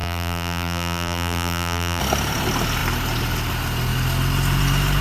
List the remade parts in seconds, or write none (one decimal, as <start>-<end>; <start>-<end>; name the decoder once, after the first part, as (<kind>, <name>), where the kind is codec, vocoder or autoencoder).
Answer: 0.0-2.0 (vocoder, BigVGAN v2)